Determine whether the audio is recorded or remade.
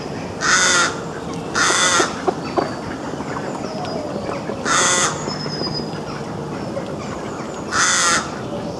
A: recorded